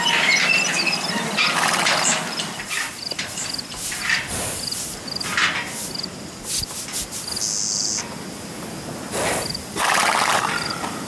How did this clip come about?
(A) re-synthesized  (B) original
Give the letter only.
B